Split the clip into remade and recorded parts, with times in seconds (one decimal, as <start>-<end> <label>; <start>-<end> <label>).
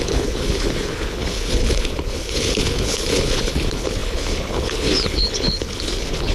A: 0.0-6.3 remade